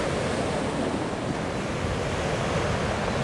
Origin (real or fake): real